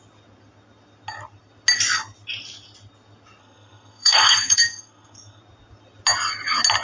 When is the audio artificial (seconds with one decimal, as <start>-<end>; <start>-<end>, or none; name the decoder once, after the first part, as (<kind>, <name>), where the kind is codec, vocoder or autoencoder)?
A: 3.4-5.4 (codec, SNAC)